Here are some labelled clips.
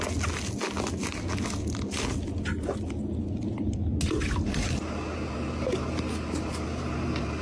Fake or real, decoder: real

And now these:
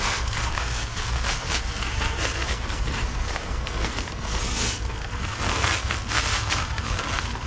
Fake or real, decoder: fake, codec, SNAC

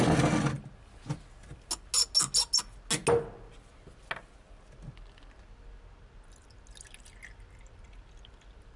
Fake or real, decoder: real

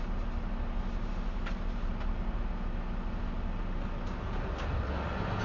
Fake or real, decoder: real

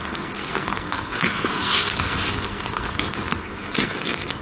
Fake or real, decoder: fake, codec, SNAC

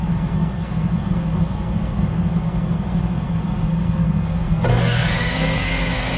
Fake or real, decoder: fake, codec, SNAC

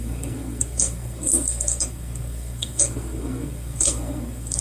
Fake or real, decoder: fake, codec, SNAC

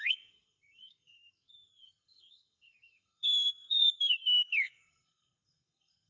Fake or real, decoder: fake, codec, SNAC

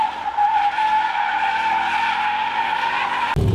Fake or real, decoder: real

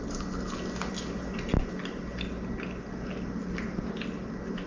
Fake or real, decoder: real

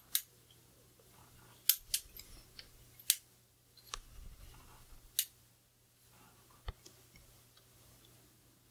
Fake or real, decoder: real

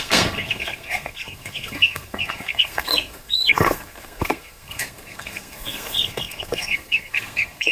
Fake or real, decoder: fake, codec, SNAC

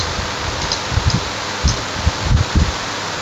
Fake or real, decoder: real